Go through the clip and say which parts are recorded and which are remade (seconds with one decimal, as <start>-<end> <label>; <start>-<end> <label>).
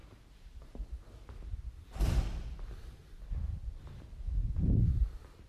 0.0-3.0 remade; 3.0-3.5 recorded; 3.5-5.5 remade